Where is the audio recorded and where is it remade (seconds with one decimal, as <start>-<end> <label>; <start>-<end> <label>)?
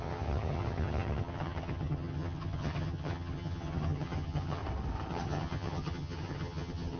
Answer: 0.0-4.6 remade; 4.6-5.1 recorded; 5.1-7.0 remade